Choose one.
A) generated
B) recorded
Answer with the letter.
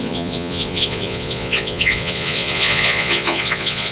A